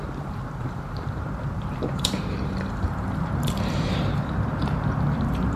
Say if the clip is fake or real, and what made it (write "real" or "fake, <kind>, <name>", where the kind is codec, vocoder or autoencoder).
fake, vocoder, BigVGAN v2